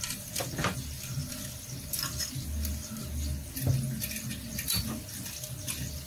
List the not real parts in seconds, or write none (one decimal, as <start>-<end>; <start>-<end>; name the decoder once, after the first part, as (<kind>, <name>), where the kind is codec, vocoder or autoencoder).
none